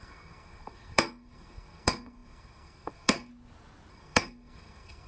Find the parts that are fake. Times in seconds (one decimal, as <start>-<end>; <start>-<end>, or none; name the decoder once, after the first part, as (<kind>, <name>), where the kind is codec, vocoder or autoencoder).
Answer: 0.0-3.3 (codec, SNAC); 3.9-5.1